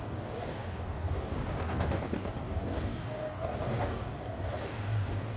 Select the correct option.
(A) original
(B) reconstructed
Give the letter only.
B